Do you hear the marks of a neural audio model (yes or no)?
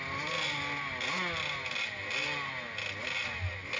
no